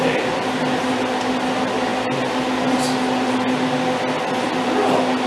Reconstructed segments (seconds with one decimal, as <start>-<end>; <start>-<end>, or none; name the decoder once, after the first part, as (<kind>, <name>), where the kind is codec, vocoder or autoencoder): none